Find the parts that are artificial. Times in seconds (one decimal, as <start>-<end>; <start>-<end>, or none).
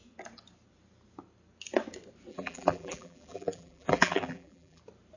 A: 2.3-4.8